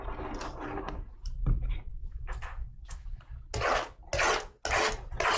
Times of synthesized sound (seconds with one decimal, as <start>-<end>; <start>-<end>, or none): 1.9-3.2